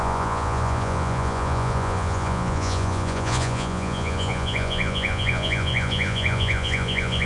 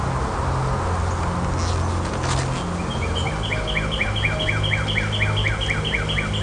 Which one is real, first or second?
second